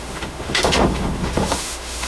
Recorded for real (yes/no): no